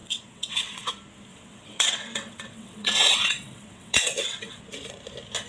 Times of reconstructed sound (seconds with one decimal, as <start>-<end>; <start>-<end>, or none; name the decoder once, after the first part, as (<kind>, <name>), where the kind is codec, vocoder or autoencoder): 0.0-0.9 (vocoder, WaveNeXt); 1.3-4.6